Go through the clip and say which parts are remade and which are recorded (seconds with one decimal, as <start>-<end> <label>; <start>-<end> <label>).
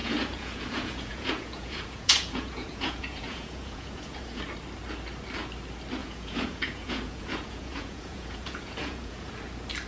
0.0-4.4 remade; 4.4-6.0 recorded; 6.0-9.3 remade; 9.3-9.9 recorded